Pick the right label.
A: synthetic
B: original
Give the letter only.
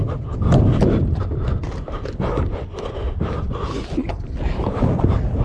A